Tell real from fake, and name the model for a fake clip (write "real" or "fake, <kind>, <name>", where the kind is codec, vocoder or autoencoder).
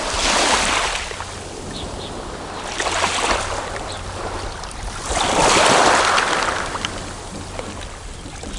real